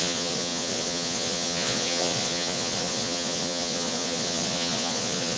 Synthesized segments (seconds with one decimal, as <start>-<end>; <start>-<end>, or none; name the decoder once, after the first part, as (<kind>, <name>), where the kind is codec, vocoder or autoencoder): 0.0-5.4 (vocoder, Vocos)